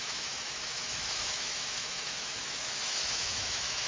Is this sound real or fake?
fake